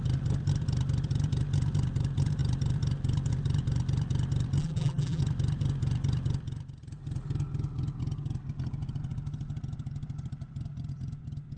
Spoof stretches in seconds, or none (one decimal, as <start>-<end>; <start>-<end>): 4.6-5.2